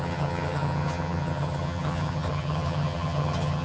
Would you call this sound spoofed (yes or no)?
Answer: yes